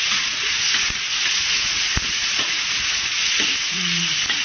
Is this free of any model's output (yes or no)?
no